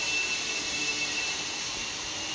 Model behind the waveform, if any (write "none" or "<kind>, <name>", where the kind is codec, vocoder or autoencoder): vocoder, BigVGAN v2